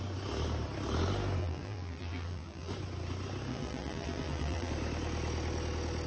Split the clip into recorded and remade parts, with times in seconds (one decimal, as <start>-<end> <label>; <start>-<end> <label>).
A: 0.0-1.4 recorded; 1.4-2.7 remade; 2.7-3.5 recorded; 3.5-4.7 remade; 4.7-6.1 recorded